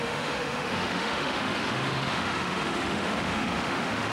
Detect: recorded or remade remade